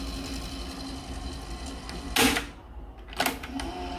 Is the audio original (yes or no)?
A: yes